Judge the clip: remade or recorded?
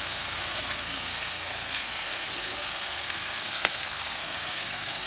remade